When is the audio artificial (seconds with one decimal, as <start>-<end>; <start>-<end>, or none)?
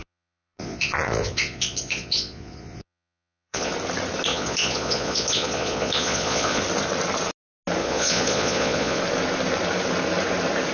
0.0-3.7; 4.3-6.6; 7.8-9.0